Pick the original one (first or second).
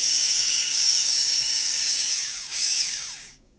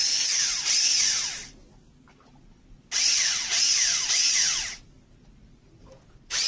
second